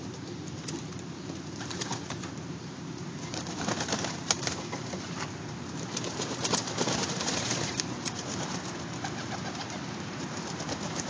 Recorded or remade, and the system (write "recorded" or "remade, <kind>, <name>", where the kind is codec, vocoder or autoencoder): remade, vocoder, BigVGAN v2